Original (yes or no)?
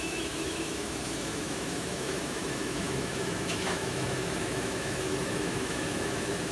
no